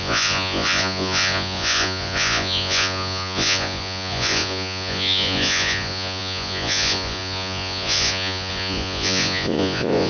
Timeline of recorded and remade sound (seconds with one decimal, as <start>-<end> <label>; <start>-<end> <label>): 0.0-10.1 remade